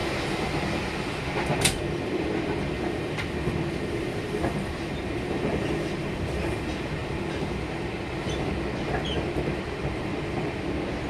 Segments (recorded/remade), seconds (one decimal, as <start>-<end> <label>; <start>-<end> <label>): 0.0-11.1 recorded